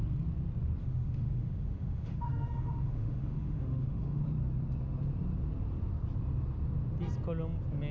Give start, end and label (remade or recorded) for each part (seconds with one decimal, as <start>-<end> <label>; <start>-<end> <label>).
0.0-0.8 recorded; 0.8-4.2 remade; 4.2-7.9 recorded